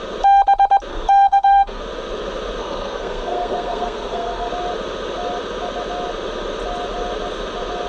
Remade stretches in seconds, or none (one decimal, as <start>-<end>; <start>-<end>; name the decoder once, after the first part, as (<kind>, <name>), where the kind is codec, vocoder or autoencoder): 0.9-1.8 (codec, SNAC); 2.6-4.5